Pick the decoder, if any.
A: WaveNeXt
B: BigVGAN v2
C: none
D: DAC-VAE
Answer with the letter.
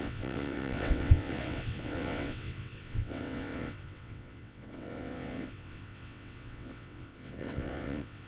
A